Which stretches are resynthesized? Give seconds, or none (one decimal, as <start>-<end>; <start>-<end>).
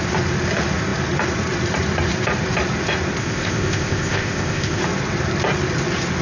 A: 3.2-4.8